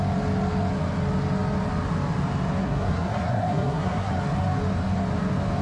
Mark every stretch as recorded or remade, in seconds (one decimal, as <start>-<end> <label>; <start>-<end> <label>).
0.0-2.6 recorded; 2.6-4.1 remade; 4.1-5.6 recorded